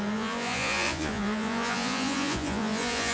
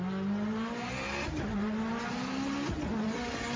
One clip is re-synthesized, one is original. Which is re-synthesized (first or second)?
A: first